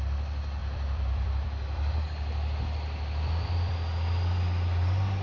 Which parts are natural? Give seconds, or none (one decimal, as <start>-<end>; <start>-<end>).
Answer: 0.0-0.6; 3.7-5.2